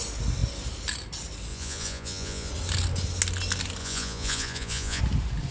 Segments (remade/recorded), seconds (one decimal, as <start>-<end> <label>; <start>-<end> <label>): 0.0-1.5 recorded; 1.5-2.5 remade; 2.5-3.8 recorded; 3.8-5.0 remade; 5.0-5.5 recorded